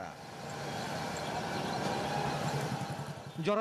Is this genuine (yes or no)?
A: no